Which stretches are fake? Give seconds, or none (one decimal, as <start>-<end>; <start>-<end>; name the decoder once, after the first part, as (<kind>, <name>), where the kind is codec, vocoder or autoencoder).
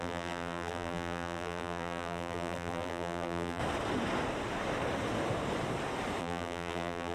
0.0-3.6 (vocoder, BigVGAN v2); 6.2-7.1